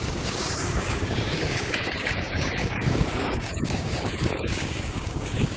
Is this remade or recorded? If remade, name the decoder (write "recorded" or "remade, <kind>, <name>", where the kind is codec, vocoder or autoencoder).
remade, codec, DAC